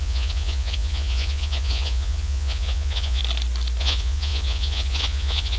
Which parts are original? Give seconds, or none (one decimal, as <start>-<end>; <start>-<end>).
3.2-3.8